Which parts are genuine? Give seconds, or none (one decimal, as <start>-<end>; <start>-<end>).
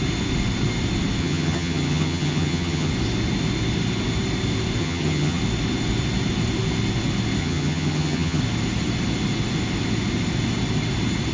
0.0-1.2; 2.9-4.8; 5.4-7.4; 8.4-11.3